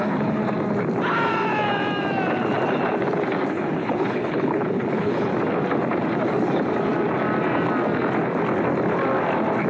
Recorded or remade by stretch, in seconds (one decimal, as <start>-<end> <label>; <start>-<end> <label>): 0.0-0.4 remade; 0.4-3.5 recorded; 3.5-5.3 remade; 5.3-9.7 recorded